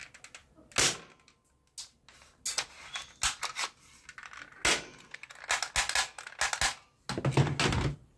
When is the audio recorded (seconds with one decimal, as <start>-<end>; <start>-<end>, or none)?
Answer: 0.0-8.2